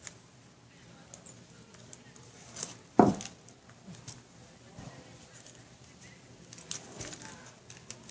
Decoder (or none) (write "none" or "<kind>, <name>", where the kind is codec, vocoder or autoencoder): none